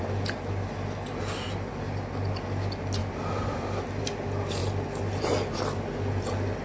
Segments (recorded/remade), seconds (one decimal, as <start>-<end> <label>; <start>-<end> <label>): 0.0-6.6 recorded